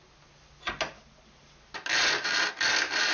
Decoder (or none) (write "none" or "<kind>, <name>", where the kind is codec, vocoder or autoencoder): none